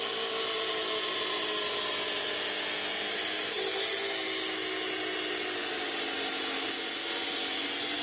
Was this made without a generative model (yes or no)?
yes